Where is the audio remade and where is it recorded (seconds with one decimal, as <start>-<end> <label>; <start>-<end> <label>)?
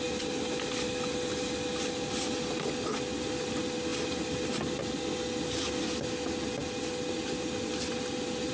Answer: 0.0-8.5 recorded